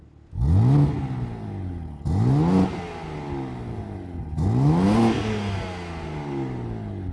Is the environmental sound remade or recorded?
recorded